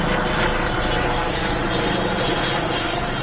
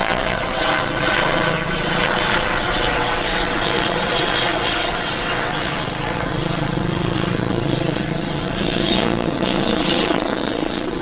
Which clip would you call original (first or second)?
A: first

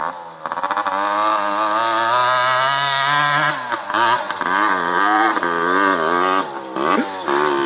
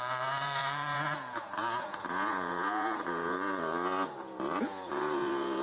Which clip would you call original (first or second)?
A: first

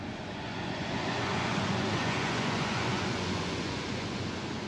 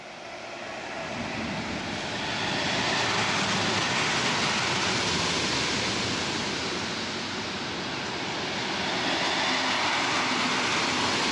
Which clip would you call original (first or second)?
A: second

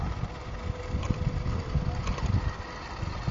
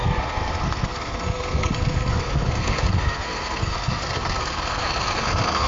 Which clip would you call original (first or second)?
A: first